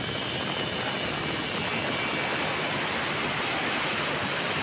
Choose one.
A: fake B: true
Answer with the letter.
B